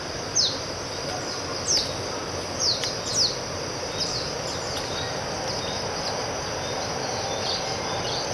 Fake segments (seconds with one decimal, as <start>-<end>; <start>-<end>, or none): none